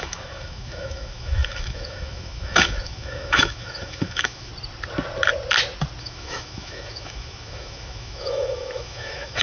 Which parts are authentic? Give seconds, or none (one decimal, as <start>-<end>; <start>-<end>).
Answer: 4.5-6.0